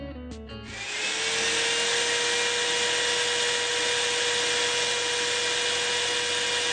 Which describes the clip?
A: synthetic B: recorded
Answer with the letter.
B